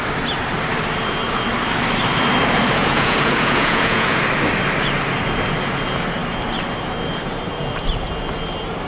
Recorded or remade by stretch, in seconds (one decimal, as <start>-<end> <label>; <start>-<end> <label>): 0.0-2.8 recorded; 2.8-4.2 remade; 4.2-8.9 recorded